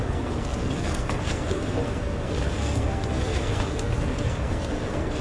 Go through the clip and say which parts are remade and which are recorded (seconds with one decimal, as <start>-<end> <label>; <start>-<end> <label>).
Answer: 0.0-5.2 remade